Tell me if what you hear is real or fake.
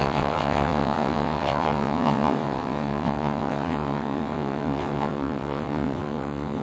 fake